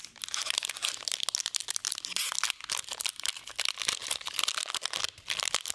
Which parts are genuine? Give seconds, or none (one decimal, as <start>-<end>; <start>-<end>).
0.0-5.7